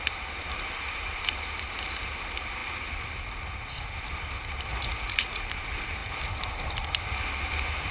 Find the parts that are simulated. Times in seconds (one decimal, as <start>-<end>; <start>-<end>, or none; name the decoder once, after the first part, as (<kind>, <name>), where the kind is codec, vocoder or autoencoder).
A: 4.7-5.4 (vocoder, Vocos)